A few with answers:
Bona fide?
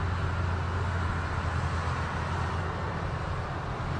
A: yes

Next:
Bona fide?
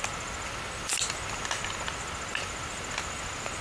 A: yes